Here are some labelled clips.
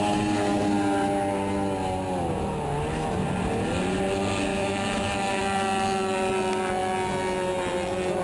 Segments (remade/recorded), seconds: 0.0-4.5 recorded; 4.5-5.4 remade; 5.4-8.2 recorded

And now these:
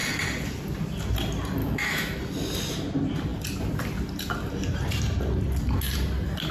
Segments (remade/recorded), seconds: 0.0-1.6 recorded; 1.6-2.2 remade; 2.2-6.5 recorded

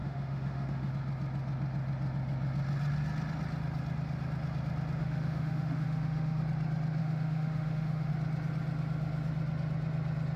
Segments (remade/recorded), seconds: 0.0-0.9 remade; 0.9-5.0 recorded; 5.0-6.4 remade; 6.4-7.0 recorded; 7.0-8.1 remade; 8.1-10.4 recorded

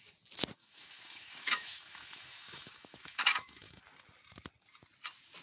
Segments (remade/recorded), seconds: 0.0-0.6 recorded; 0.6-3.8 remade; 3.8-5.4 recorded

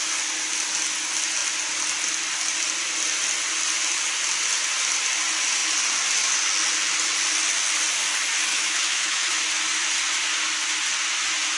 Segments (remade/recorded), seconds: 0.0-8.5 recorded; 8.5-9.4 remade; 9.4-11.6 recorded

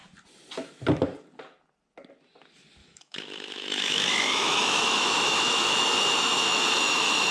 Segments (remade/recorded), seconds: 0.0-2.8 recorded; 2.8-7.3 remade

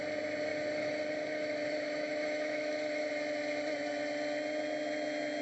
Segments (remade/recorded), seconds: 0.0-0.5 recorded; 0.5-3.1 remade; 3.1-5.4 recorded